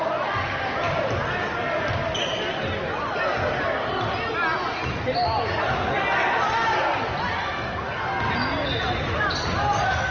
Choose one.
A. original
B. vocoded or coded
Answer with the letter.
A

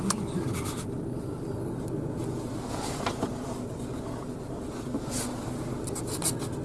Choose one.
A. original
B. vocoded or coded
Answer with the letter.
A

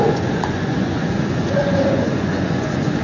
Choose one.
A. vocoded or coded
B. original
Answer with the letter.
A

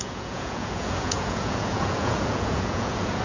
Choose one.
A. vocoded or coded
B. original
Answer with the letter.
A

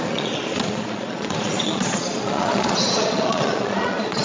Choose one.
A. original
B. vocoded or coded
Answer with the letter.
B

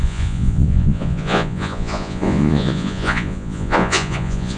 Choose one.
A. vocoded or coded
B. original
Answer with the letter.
A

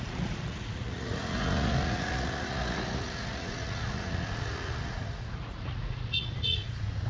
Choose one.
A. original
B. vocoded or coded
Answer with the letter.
B